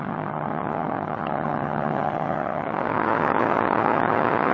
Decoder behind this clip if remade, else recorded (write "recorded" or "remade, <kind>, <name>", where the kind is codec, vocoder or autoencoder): remade, vocoder, HiFi-GAN